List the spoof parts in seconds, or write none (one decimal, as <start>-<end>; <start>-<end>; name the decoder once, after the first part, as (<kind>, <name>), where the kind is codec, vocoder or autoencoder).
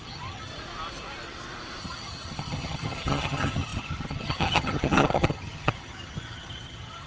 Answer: 0.0-0.5 (vocoder, HiFi-GAN); 1.8-7.1